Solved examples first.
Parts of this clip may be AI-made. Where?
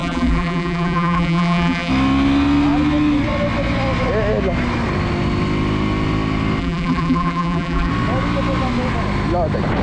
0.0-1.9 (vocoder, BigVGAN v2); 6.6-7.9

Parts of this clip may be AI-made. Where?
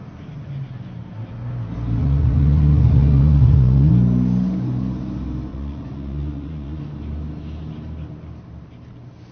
2.0-3.9 (vocoder, Vocos); 5.5-6.8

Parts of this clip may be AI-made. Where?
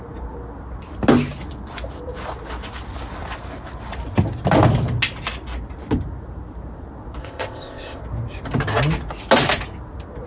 7.2-8.0 (codec, ZipCodec)